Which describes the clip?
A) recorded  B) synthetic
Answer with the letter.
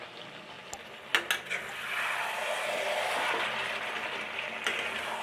A